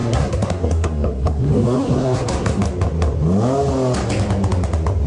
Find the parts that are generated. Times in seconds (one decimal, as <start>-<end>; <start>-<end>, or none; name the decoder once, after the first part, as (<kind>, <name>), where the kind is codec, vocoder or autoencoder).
0.0-2.6 (codec, SNAC)